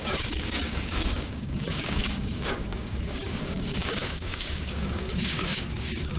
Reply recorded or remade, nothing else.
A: remade